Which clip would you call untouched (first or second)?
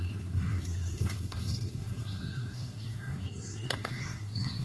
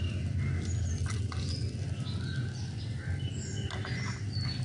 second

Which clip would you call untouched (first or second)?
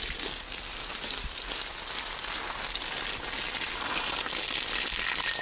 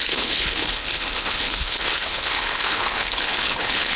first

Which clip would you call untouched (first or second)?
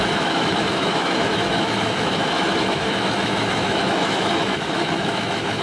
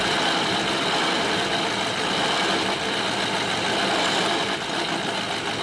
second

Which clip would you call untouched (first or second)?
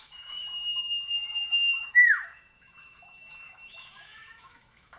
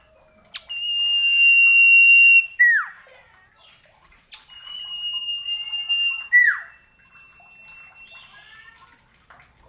second